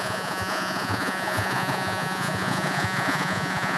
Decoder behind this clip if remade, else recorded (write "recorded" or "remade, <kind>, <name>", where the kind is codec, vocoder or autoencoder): remade, vocoder, Vocos